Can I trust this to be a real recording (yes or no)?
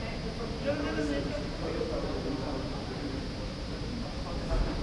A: yes